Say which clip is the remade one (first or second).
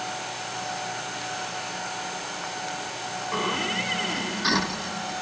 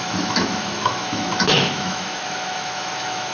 second